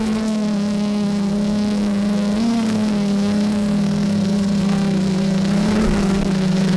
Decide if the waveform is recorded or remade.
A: remade